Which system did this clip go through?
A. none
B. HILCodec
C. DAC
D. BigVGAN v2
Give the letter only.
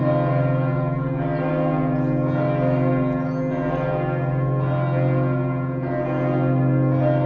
A